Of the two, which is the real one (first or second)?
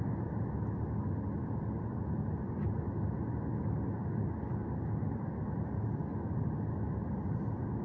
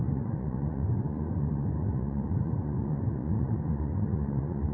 first